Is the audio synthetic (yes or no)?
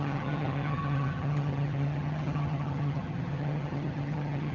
yes